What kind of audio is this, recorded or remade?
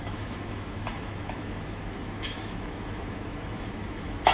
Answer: remade